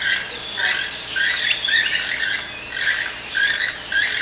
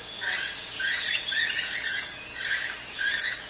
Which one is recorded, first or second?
first